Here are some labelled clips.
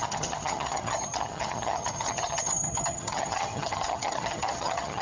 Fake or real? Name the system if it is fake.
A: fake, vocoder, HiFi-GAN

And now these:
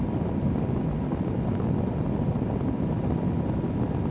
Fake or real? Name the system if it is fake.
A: real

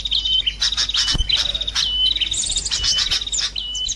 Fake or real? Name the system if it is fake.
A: real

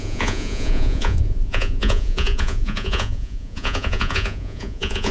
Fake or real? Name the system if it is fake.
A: fake, vocoder, Vocos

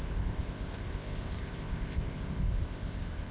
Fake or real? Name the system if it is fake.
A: fake, codec, ZipCodec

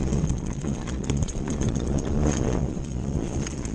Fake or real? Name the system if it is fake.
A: fake, vocoder, Vocos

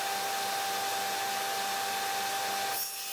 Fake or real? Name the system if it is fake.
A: real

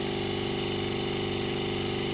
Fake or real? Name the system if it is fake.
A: real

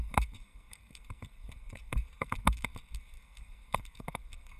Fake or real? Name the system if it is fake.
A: fake, codec, SNAC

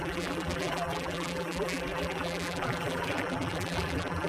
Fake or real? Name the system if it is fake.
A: fake, vocoder, BigVGAN v2